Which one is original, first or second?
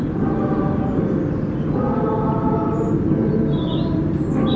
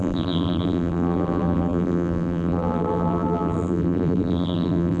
first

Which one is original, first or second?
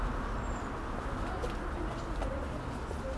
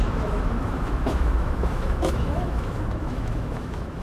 first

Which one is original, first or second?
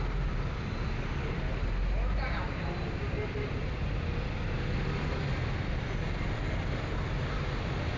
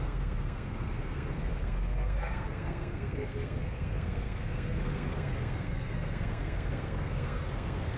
first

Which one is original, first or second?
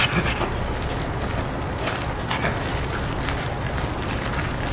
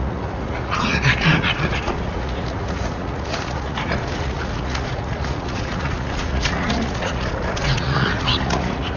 first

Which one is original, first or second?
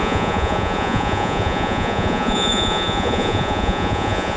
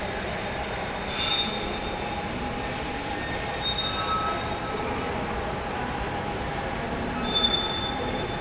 second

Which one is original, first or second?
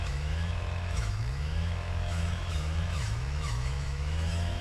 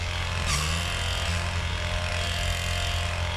second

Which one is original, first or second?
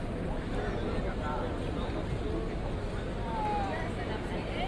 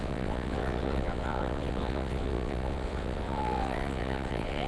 first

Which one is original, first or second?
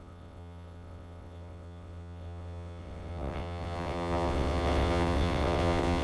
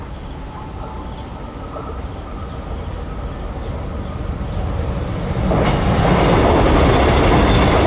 second